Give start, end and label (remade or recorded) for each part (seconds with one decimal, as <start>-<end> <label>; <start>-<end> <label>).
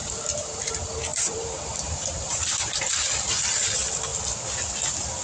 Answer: 0.0-0.7 remade; 0.7-1.1 recorded; 1.1-2.7 remade; 2.7-5.2 recorded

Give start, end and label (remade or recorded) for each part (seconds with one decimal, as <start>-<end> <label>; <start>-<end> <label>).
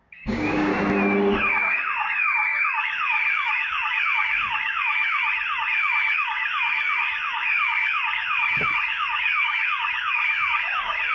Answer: 0.0-0.7 remade; 0.7-1.4 recorded; 1.4-5.2 remade; 5.2-5.7 recorded; 5.7-11.1 remade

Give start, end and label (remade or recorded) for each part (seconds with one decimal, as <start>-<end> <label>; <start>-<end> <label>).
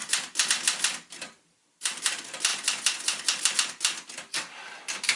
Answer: 0.0-1.4 remade; 1.4-2.5 recorded; 2.5-3.4 remade; 3.4-5.2 recorded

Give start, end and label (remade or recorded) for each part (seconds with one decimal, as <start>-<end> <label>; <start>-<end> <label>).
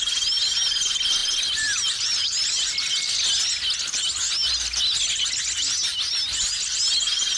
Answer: 0.0-1.2 recorded; 1.2-2.9 remade; 2.9-7.4 recorded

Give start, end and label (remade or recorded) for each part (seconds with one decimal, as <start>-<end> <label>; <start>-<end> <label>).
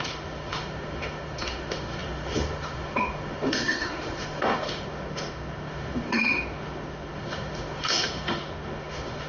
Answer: 0.0-9.3 remade